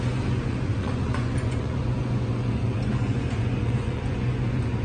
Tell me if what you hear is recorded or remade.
remade